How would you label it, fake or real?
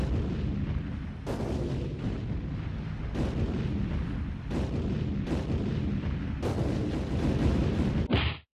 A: fake